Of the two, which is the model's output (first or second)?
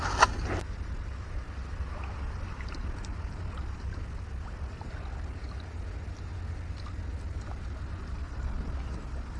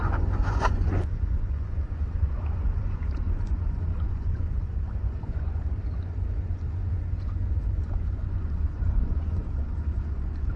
second